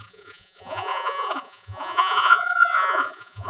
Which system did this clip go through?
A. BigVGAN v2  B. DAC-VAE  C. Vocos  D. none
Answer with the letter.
C